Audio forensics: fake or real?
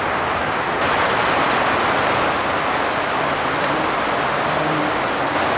real